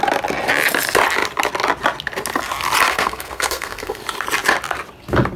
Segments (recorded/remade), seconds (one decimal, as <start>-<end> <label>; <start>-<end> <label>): 0.0-2.9 recorded; 2.9-4.0 remade; 4.0-5.4 recorded